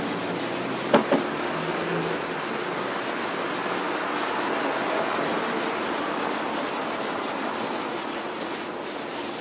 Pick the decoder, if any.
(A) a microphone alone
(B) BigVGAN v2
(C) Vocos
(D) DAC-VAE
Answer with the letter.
A